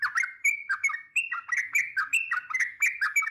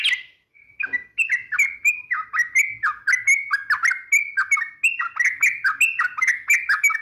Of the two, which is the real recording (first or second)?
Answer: second